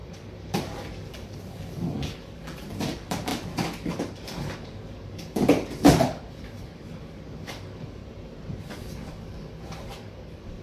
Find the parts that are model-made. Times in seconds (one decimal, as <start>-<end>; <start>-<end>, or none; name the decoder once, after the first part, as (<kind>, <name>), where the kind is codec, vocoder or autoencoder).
0.0-8.0 (codec, DAC); 8.6-10.6